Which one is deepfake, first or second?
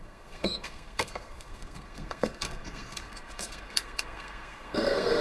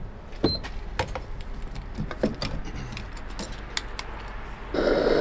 first